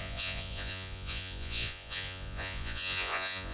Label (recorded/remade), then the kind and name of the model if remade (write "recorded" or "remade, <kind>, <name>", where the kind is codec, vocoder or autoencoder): remade, vocoder, Vocos